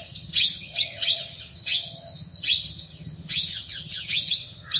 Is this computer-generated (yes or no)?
yes